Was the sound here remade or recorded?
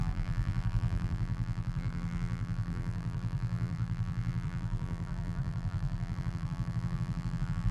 remade